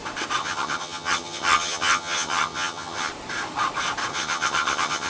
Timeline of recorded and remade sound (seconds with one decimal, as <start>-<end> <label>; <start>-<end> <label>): 0.0-0.4 recorded; 0.4-3.1 remade; 3.1-4.1 recorded; 4.1-5.1 remade